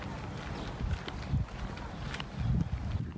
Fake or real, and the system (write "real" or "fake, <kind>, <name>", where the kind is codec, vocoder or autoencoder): real